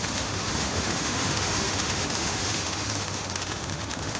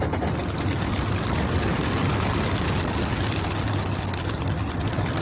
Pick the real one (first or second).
second